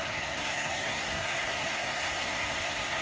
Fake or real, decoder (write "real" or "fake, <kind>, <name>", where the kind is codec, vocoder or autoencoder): fake, codec, SNAC